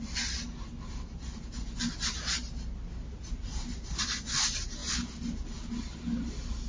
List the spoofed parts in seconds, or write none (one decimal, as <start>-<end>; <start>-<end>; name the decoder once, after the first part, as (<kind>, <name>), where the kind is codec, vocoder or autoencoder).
none